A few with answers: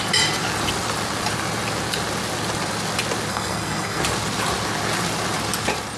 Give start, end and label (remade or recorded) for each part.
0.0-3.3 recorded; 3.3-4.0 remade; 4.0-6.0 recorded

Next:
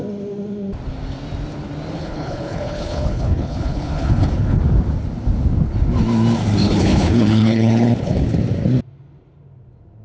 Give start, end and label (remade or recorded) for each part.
0.0-2.0 recorded; 2.0-4.6 remade; 4.6-6.6 recorded; 6.6-8.4 remade; 8.4-10.0 recorded

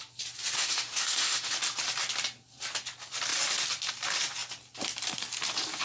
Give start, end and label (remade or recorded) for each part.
0.0-0.6 recorded; 0.6-1.5 remade; 1.5-5.8 recorded